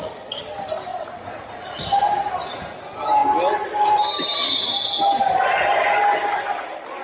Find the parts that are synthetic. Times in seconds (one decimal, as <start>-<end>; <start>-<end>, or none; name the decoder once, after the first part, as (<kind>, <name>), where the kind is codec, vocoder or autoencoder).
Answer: 0.9-1.8 (vocoder, Vocos)